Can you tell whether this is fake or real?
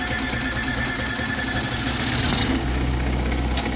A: real